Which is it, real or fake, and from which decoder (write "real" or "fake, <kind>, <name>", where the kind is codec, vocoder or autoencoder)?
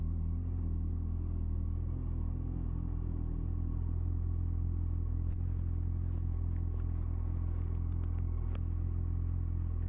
real